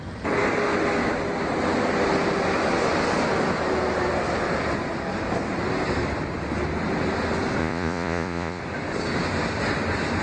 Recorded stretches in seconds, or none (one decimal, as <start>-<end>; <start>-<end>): 0.0-7.6; 8.6-10.2